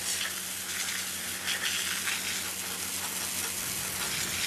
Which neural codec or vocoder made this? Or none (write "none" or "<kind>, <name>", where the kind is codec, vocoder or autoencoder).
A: none